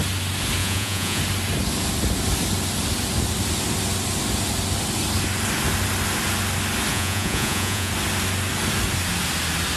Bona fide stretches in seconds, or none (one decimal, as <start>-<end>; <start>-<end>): 0.0-0.6; 1.2-6.9; 7.9-9.8